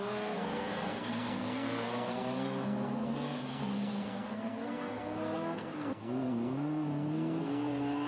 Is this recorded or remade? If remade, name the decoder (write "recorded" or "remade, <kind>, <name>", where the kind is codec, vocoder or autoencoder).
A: remade, codec, SNAC